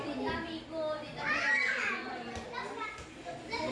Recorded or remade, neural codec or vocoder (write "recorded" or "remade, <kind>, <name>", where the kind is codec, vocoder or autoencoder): recorded